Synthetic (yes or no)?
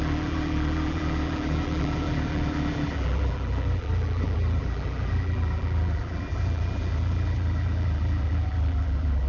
yes